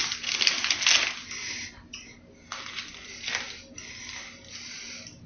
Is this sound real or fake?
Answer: real